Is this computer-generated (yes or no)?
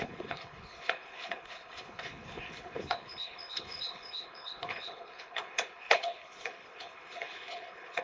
yes